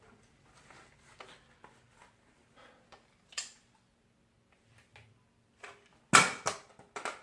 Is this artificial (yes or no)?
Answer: no